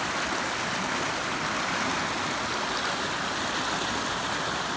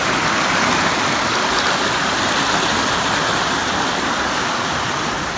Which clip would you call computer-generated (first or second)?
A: second